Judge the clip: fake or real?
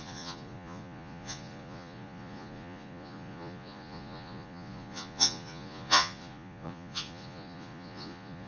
fake